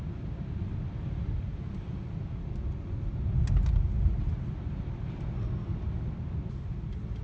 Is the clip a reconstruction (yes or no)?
no